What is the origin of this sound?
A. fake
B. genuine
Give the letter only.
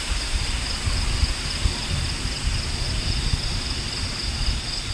B